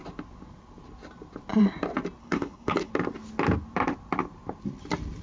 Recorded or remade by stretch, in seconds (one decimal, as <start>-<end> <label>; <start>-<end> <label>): 0.0-2.2 recorded; 2.2-2.9 remade; 2.9-5.2 recorded